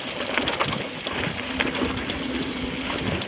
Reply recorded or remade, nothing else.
recorded